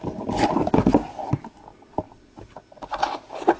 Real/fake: real